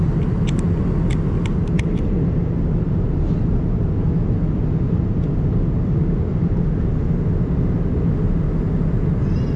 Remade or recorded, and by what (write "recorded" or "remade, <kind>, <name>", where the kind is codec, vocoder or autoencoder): recorded